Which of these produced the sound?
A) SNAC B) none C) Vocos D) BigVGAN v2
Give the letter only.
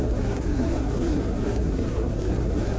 A